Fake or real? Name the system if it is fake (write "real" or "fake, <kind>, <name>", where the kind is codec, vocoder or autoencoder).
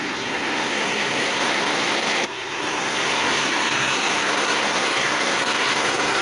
fake, codec, SNAC